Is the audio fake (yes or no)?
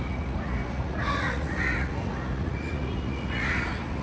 yes